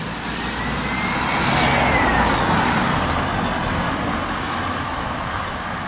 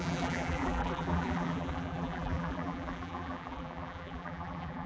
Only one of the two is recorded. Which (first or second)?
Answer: first